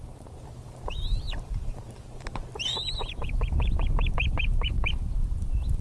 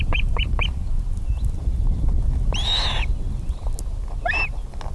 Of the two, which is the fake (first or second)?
first